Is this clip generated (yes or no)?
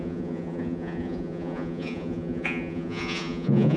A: yes